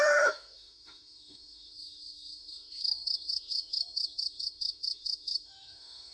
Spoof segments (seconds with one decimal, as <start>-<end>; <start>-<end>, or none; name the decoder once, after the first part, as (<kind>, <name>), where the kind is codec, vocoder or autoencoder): 0.0-6.1 (autoencoder, DAC-VAE)